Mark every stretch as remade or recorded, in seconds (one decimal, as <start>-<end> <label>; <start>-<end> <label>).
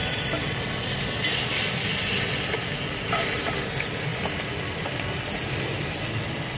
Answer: 0.0-4.1 recorded; 4.1-5.2 remade; 5.2-6.6 recorded